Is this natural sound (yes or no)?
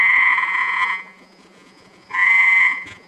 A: no